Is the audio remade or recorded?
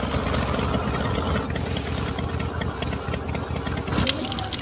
recorded